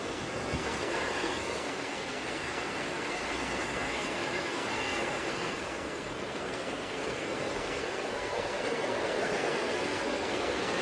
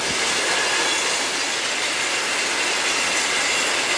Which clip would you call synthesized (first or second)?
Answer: first